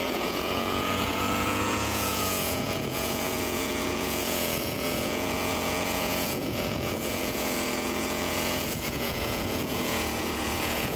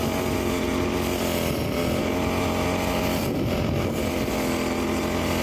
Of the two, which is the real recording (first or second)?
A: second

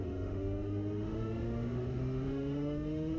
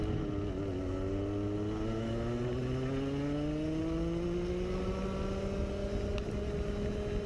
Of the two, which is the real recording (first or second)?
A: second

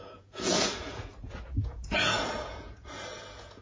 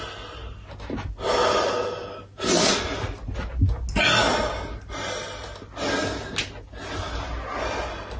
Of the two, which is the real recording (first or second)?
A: second